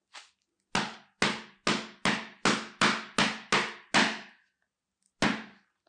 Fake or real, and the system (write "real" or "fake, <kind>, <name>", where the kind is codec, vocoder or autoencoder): real